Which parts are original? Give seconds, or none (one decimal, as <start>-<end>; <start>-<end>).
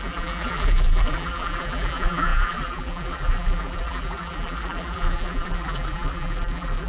none